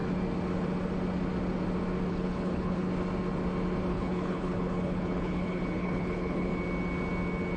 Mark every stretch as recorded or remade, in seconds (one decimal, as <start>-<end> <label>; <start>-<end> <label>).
0.0-2.1 recorded; 2.1-2.9 remade; 2.9-3.9 recorded; 3.9-6.5 remade; 6.5-7.6 recorded